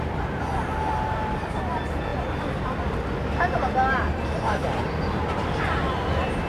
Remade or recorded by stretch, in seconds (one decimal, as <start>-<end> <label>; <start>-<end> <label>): 0.0-6.5 recorded